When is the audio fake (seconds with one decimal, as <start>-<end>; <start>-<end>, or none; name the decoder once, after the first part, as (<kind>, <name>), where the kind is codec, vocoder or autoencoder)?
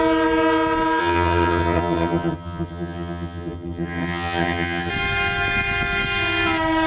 1.0-4.9 (vocoder, HiFi-GAN)